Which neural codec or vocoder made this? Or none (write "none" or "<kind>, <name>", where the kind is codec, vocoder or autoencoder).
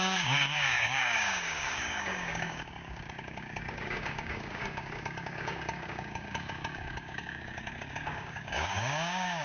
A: codec, DAC